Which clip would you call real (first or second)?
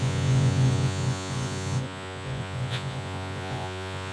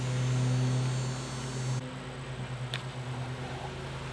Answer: second